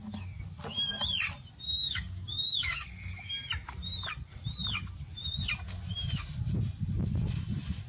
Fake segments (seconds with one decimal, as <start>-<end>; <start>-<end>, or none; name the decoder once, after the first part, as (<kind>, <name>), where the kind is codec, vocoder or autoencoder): 1.8-3.3 (codec, DAC)